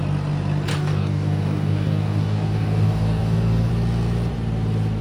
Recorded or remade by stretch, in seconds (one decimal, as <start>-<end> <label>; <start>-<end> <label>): 0.0-0.7 recorded; 0.7-3.7 remade; 3.7-5.0 recorded